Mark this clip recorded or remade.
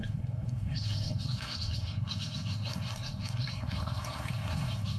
remade